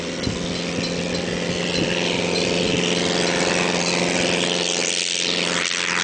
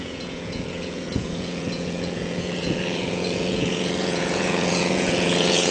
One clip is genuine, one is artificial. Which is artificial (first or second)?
second